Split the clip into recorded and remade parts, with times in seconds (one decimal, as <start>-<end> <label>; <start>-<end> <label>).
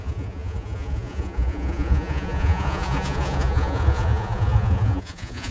0.0-5.5 remade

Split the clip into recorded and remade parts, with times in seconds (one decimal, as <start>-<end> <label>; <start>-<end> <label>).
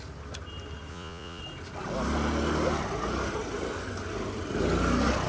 0.0-0.9 recorded; 0.9-1.4 remade; 1.4-5.3 recorded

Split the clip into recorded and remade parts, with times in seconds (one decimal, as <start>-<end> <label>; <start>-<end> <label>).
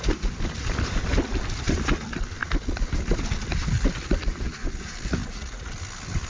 0.0-5.2 recorded; 5.2-5.7 remade; 5.7-6.3 recorded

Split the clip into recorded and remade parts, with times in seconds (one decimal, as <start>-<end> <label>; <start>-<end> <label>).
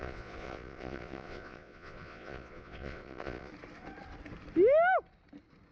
0.0-3.5 remade; 3.5-5.7 recorded